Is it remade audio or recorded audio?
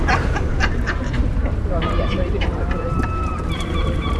remade